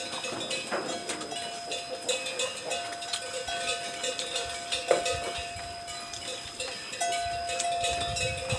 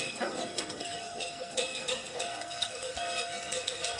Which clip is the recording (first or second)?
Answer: first